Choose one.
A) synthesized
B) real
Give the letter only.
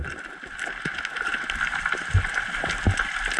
B